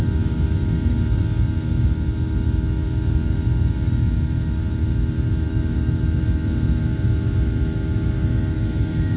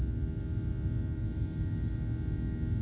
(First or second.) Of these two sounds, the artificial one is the first